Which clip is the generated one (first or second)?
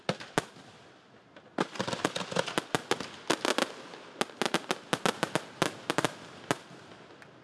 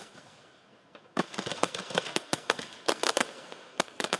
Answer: second